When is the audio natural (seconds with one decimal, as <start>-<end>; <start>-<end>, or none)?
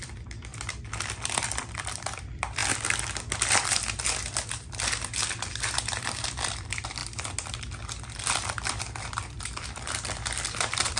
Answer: 0.5-1.1; 2.6-5.3; 7.0-8.8